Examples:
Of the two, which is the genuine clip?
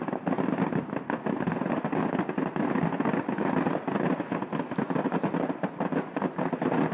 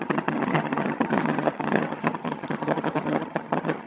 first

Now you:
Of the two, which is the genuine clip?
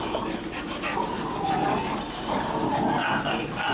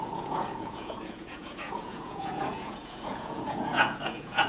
first